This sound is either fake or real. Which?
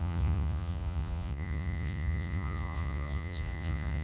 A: fake